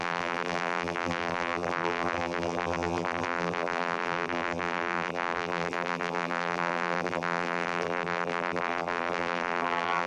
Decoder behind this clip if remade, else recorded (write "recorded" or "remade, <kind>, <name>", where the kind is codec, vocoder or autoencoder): remade, vocoder, BigVGAN v2